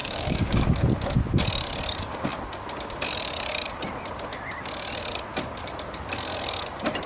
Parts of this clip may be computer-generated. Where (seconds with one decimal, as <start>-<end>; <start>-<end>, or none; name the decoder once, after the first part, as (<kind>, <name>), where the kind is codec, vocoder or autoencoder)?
0.0-0.7 (codec, DAC)